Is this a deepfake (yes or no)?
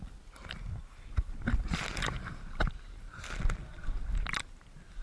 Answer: no